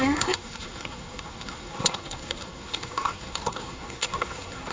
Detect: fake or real fake